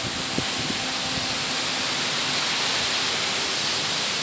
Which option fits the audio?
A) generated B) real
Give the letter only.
B